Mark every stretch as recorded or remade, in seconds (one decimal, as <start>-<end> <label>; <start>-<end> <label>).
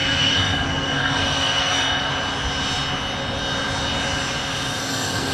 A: 0.0-2.1 remade; 2.1-4.8 recorded; 4.8-5.3 remade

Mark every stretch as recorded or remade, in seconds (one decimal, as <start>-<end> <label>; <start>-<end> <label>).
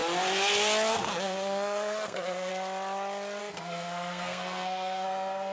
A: 0.0-0.9 recorded; 0.9-2.5 remade; 2.5-3.4 recorded; 3.4-5.5 remade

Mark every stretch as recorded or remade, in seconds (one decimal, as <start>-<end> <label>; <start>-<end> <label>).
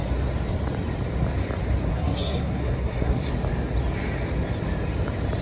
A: 0.0-1.9 recorded; 1.9-3.3 remade; 3.3-5.4 recorded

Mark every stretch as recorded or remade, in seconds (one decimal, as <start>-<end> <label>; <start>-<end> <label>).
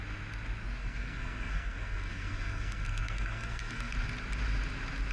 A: 0.0-0.8 recorded; 0.8-3.9 remade; 3.9-5.1 recorded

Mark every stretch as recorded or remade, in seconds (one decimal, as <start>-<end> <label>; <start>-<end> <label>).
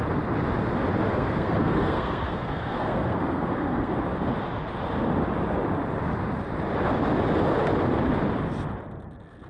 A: 0.0-1.1 recorded; 1.1-3.9 remade; 3.9-9.5 recorded